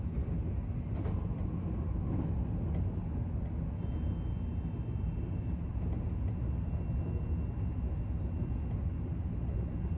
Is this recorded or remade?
recorded